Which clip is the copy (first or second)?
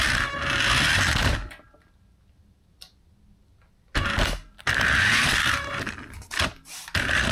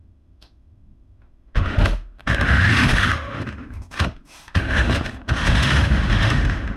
second